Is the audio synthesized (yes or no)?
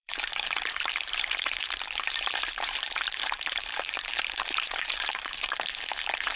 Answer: yes